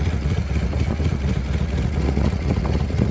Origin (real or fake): fake